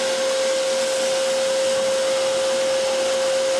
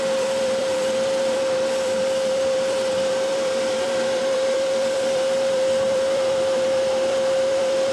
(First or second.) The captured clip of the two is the first